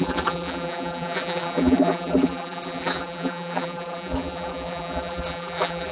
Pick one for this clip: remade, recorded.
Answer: remade